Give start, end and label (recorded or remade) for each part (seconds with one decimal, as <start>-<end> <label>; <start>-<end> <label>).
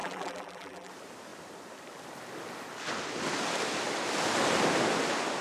0.0-0.9 remade; 0.9-5.4 recorded